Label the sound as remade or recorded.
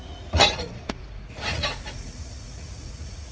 remade